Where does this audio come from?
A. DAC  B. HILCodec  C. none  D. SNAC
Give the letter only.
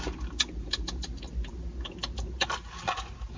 C